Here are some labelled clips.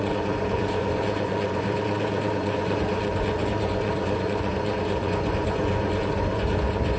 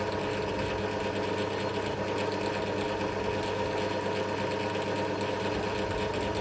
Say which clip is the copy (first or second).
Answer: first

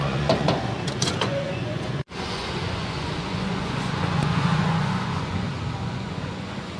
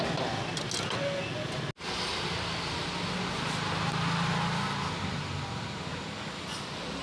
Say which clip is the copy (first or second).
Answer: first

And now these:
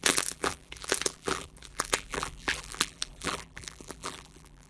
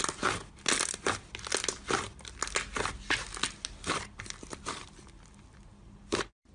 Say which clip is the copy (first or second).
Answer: first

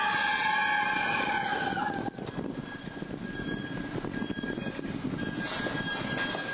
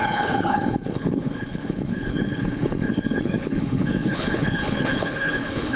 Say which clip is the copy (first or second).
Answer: second